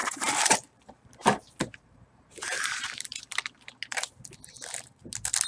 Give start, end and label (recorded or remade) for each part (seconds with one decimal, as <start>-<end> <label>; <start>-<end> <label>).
0.0-3.2 remade; 3.2-5.5 recorded